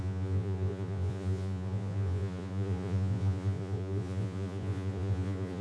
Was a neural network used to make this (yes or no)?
yes